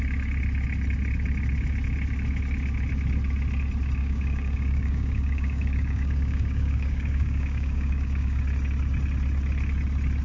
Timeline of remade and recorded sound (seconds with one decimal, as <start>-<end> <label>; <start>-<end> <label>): 0.0-4.0 recorded; 4.0-8.4 remade; 8.4-10.2 recorded